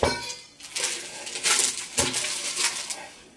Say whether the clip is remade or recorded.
recorded